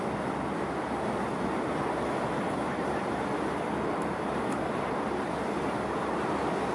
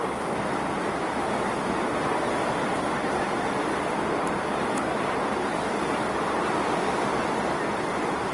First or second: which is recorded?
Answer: first